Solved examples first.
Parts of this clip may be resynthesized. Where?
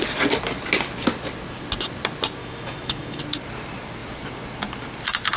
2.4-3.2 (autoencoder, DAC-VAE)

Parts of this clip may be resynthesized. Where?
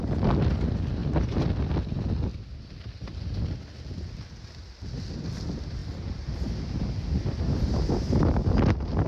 5.8-6.8 (vocoder, BigVGAN v2)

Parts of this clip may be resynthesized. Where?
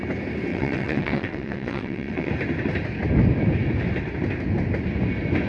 0.5-2.3 (vocoder, WaveNeXt)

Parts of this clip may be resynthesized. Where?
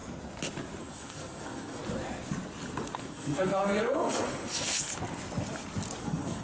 0.8-1.8 (codec, SNAC); 3.0-4.9; 6.0-6.4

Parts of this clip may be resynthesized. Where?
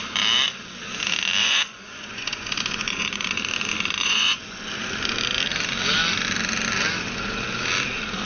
1.4-3.4 (vocoder, Vocos); 4.0-4.7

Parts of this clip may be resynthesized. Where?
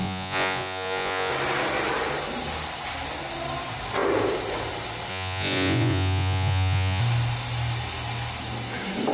0.0-1.3 (vocoder, Vocos); 5.1-7.0